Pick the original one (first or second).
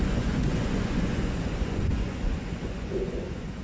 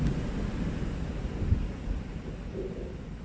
second